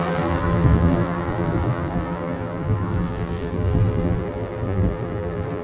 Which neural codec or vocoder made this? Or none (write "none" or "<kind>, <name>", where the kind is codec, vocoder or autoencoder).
vocoder, BigVGAN v2